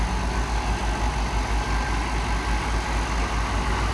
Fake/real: real